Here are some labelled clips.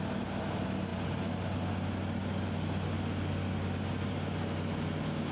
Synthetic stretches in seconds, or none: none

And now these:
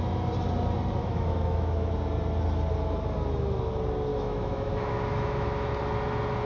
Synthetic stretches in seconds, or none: 1.0-1.9 (autoencoder, DAC-VAE); 4.1-5.7

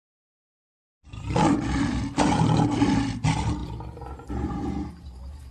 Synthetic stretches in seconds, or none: none

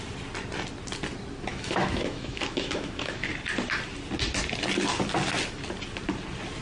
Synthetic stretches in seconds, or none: 1.5-3.2 (autoencoder, DAC-VAE)